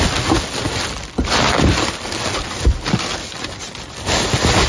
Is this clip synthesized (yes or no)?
no